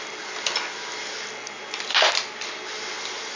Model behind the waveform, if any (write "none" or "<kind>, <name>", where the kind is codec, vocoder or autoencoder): none